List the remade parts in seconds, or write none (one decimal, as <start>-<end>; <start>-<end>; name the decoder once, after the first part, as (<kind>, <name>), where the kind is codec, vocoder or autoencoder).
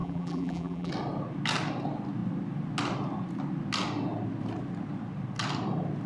0.0-0.9 (vocoder, BigVGAN v2)